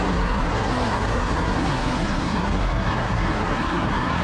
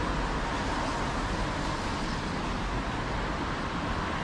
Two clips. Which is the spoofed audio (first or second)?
first